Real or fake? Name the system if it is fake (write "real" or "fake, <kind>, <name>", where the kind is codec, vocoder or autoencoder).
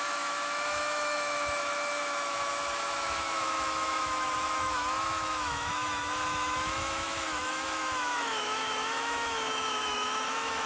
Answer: fake, autoencoder, DAC-VAE